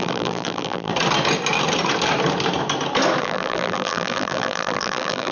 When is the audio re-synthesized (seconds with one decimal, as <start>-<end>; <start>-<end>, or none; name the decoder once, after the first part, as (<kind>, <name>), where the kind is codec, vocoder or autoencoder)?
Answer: 0.0-0.9 (vocoder, BigVGAN v2); 3.2-5.3